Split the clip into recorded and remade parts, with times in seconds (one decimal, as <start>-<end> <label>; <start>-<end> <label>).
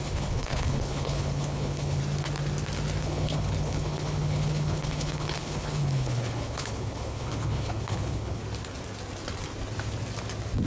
0.0-2.0 remade; 2.0-3.0 recorded; 3.0-8.4 remade; 8.4-10.7 recorded